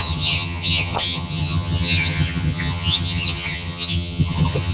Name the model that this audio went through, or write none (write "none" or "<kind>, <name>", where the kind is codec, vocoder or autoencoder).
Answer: vocoder, HiFi-GAN